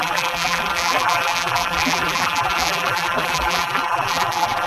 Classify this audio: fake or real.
fake